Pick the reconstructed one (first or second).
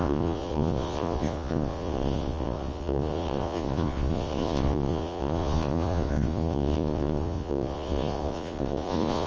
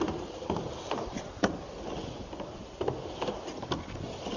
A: first